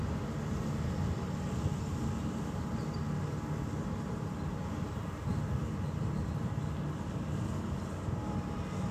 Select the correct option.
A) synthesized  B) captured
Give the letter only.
B